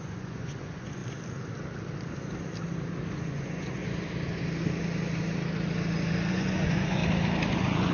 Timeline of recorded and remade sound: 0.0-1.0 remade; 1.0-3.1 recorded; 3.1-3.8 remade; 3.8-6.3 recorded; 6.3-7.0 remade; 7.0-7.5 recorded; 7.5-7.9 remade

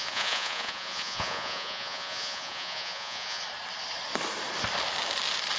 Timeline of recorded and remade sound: 0.0-3.4 remade; 3.4-5.6 recorded